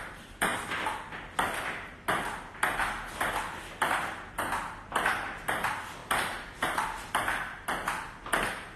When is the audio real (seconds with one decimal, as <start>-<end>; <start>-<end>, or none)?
0.0-8.8